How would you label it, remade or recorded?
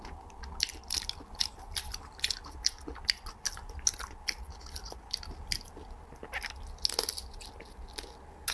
recorded